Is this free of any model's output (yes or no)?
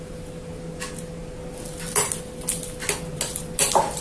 yes